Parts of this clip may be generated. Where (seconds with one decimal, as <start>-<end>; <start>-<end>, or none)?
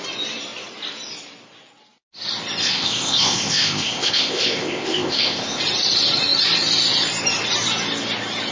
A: 2.6-5.6